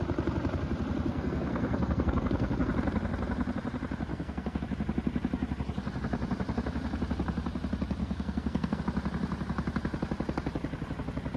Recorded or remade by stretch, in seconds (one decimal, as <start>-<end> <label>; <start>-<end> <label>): 0.0-1.1 recorded; 1.1-2.7 remade; 2.7-4.1 recorded; 4.1-4.6 remade; 4.6-8.0 recorded; 8.0-8.8 remade; 8.8-11.4 recorded